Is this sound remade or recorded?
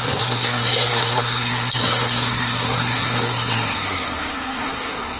remade